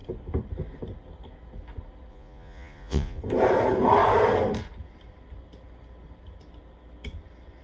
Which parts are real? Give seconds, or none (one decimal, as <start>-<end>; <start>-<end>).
0.0-2.1; 3.2-7.6